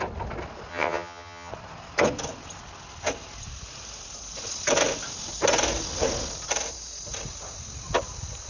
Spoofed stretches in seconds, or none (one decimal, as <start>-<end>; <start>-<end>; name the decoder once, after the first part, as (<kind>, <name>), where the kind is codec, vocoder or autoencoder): 0.7-1.5 (vocoder, HiFi-GAN)

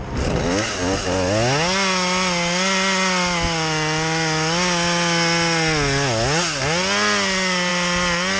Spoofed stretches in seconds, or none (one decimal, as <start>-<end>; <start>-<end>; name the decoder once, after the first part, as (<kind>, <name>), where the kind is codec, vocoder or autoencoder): none

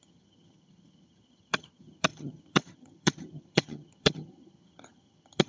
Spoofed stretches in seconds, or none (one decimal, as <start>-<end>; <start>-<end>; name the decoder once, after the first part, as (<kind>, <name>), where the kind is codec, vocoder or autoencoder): 0.0-5.5 (vocoder, HiFi-GAN)

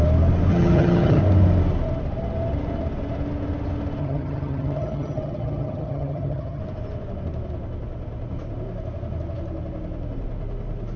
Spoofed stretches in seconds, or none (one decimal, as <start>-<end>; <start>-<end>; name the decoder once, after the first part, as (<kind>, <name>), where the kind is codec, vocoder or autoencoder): 0.5-1.2 (vocoder, HiFi-GAN); 4.0-6.6

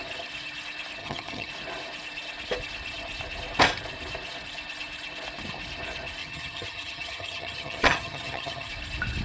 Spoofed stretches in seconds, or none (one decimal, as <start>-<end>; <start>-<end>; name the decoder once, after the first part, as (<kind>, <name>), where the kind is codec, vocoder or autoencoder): 1.0-1.5 (vocoder, HiFi-GAN); 6.2-8.7